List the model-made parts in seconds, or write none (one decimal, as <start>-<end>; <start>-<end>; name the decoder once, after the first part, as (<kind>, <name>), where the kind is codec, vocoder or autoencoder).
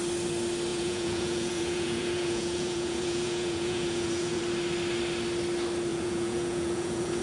0.7-4.4 (vocoder, Vocos); 5.9-7.2